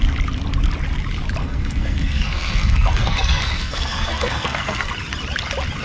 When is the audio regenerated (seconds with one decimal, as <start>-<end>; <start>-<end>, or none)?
1.4-4.9